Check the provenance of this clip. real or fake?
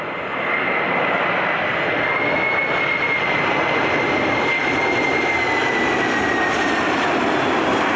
real